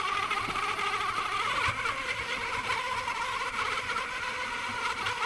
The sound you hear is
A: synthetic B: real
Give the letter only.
B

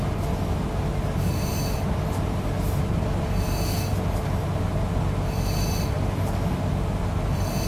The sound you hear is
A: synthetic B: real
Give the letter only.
B